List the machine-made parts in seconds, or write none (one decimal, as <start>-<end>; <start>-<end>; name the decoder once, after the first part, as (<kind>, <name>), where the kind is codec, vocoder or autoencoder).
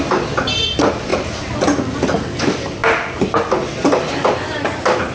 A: none